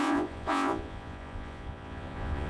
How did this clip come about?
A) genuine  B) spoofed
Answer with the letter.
B